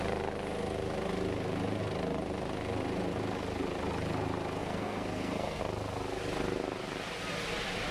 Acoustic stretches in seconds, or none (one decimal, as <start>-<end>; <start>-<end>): 0.0-4.6; 5.6-7.9